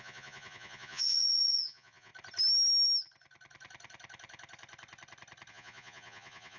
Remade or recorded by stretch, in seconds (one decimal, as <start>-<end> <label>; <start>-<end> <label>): 0.0-2.1 remade; 2.1-5.5 recorded; 5.5-6.6 remade